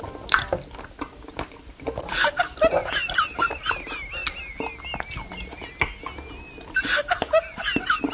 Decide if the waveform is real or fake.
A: real